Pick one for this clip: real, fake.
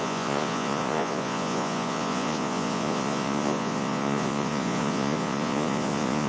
fake